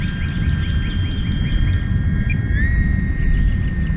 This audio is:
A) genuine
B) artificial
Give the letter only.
A